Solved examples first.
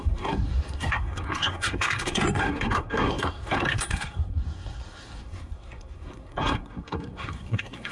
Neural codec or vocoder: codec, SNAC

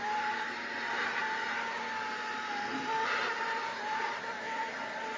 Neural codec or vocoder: none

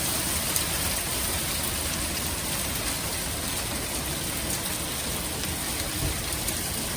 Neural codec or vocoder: none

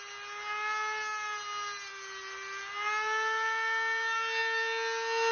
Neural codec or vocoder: none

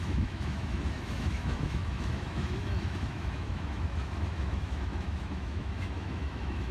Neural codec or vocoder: autoencoder, DAC-VAE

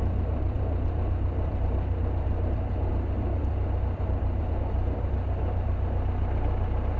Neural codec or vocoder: vocoder, BigVGAN v2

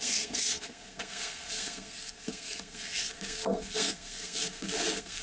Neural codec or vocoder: codec, SNAC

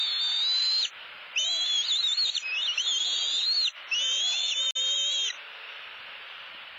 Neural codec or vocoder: none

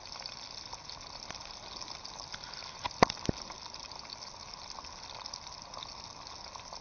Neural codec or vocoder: none